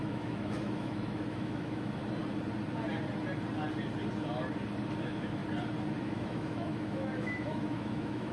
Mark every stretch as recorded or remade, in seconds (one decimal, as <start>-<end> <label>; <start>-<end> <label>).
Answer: 0.0-2.0 remade; 2.0-5.0 recorded; 5.0-5.4 remade; 5.4-6.0 recorded; 6.0-8.3 remade